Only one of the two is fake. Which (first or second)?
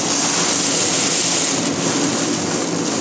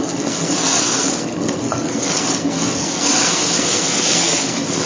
second